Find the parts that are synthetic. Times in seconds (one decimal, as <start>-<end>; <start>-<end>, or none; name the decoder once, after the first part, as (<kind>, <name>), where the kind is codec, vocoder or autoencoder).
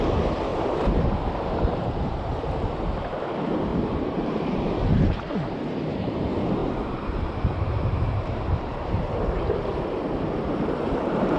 0.5-2.9 (vocoder, BigVGAN v2); 3.7-5.2; 6.6-9.0